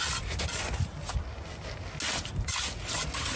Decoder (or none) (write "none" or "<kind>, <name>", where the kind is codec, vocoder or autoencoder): none